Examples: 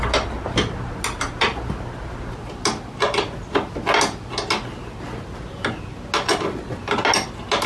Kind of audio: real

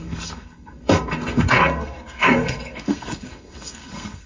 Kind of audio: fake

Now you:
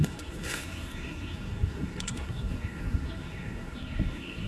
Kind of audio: fake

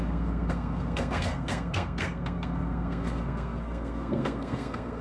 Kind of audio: fake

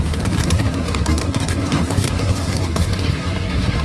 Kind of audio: fake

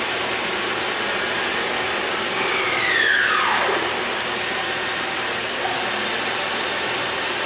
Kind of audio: real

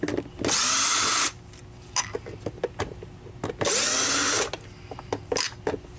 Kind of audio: real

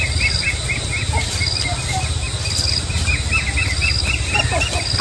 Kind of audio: real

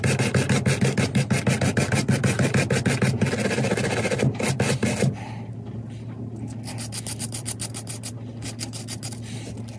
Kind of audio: real